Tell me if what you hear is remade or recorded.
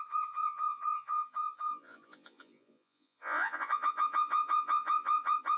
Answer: remade